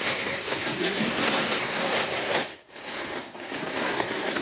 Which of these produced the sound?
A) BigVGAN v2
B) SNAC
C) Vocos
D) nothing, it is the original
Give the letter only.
B